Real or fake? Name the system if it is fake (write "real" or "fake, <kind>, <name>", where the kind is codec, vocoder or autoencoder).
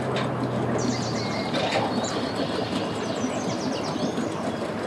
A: real